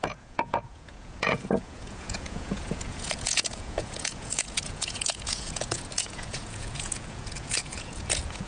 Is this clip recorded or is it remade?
remade